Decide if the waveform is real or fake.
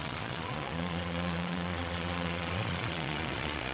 fake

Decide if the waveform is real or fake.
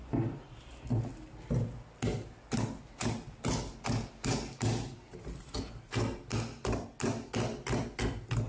real